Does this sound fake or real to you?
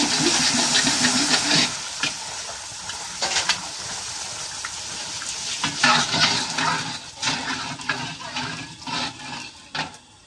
real